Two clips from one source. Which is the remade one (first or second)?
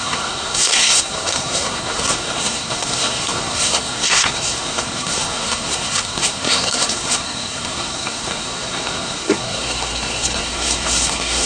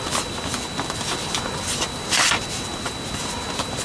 first